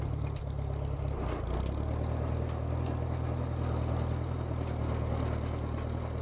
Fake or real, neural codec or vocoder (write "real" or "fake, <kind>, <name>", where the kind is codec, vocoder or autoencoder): real